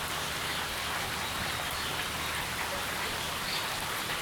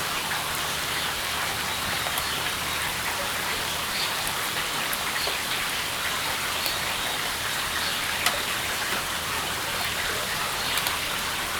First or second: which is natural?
first